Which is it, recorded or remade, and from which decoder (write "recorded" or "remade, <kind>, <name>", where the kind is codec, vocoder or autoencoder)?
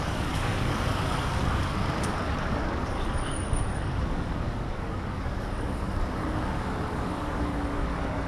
remade, codec, DAC